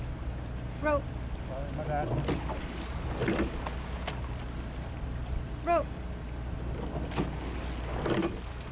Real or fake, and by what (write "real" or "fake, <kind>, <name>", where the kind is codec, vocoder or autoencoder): real